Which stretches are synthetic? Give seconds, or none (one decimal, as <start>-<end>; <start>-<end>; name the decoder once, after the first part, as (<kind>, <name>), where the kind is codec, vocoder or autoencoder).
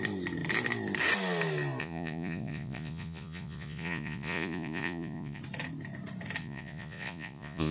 1.8-5.4 (vocoder, Vocos); 6.4-7.7